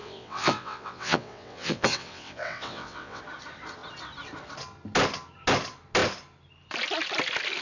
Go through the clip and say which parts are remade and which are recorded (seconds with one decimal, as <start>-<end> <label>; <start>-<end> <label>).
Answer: 0.0-3.2 remade; 3.2-7.6 recorded